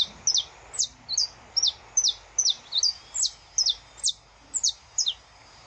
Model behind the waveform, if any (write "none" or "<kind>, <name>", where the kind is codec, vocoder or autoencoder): none